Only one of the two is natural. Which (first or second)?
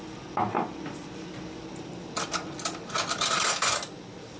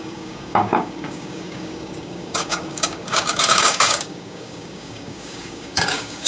first